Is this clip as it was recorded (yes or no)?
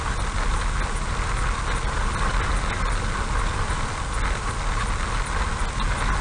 yes